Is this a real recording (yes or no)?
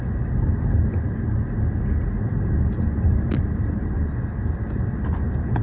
yes